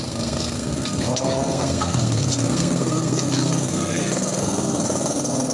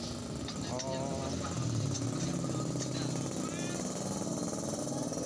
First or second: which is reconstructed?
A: first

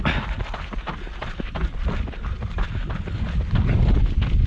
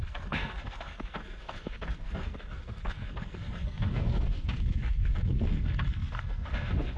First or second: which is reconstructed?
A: second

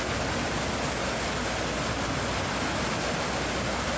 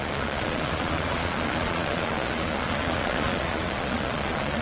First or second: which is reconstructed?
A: second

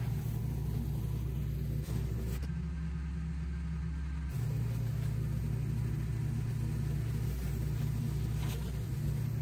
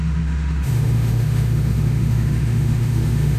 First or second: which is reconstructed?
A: second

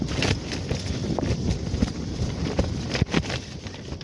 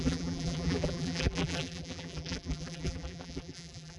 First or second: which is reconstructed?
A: second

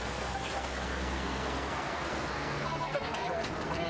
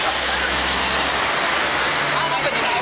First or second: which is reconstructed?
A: first